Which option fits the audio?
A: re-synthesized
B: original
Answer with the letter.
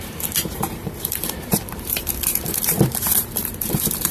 A